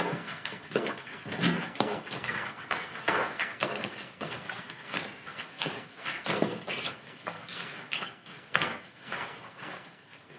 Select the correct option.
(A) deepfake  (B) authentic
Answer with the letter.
A